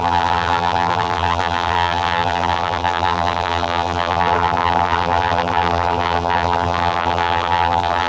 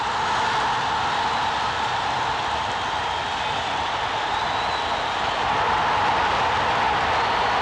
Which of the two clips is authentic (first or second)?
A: second